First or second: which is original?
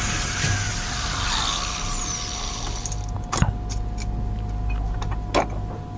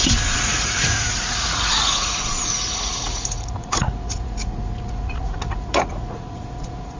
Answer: first